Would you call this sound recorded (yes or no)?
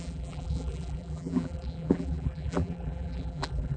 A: no